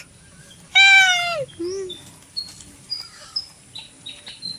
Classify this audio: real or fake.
real